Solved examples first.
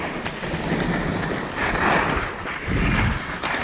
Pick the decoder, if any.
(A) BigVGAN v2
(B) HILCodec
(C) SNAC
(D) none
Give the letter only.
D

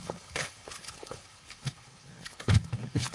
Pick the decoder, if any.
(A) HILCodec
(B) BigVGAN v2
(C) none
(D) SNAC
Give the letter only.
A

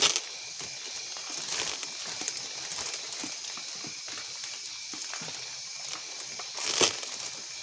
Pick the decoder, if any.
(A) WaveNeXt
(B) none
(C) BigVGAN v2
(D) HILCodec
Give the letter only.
B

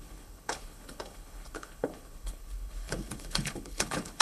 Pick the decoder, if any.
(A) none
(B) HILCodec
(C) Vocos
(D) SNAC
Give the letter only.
B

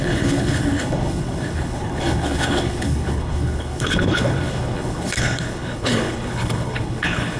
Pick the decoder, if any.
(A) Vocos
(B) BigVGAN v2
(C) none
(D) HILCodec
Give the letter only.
D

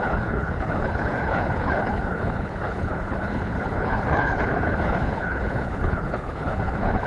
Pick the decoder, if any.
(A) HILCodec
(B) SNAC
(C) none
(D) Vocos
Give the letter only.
A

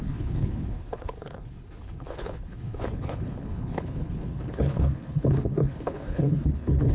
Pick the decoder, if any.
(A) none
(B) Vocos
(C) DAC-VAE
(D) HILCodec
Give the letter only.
D